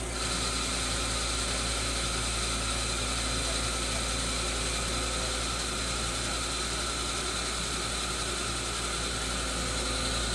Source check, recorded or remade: recorded